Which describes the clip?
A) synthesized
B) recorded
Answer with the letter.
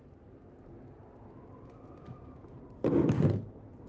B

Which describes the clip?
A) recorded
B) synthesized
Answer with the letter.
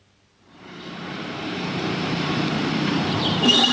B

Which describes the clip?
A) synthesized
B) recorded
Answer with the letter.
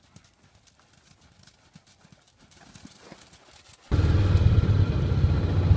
B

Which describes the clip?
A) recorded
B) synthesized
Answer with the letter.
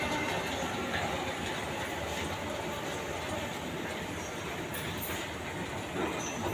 A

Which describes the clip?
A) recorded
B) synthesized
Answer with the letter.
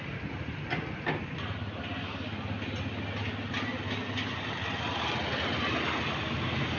A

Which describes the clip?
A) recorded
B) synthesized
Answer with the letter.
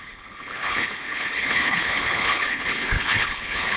B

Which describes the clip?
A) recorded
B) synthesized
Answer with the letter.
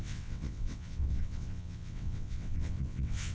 B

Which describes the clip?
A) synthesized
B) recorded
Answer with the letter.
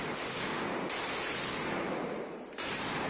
B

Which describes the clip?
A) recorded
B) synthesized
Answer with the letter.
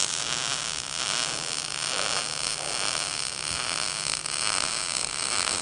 A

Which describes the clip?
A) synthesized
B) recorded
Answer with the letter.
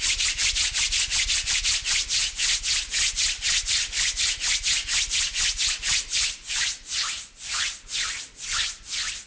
B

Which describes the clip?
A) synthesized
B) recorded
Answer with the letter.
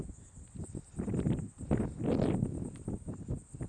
B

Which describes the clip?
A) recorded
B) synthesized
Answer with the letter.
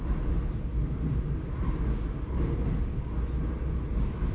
A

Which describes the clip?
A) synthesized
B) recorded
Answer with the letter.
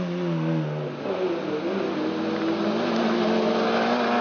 B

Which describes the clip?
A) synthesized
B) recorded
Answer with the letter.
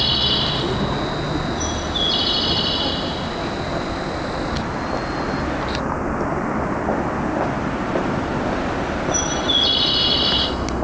B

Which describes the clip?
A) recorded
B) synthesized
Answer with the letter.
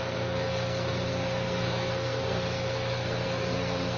B